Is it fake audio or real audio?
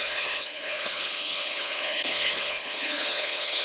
fake